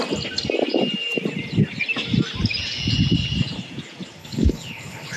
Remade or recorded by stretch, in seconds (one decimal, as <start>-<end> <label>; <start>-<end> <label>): 0.0-4.2 recorded; 4.2-5.2 remade